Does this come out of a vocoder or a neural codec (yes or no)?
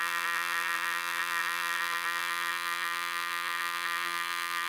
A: yes